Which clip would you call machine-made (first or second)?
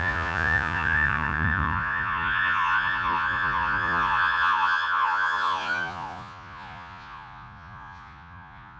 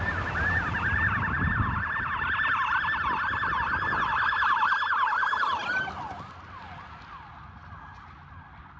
first